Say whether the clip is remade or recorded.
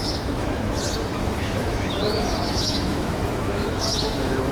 remade